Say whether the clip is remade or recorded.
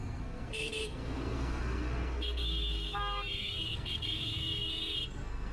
remade